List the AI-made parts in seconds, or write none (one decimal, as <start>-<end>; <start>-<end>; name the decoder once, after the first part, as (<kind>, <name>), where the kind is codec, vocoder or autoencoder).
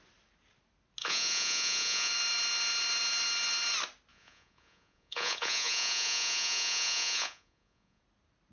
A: 1.0-2.1 (vocoder, Vocos); 4.1-8.0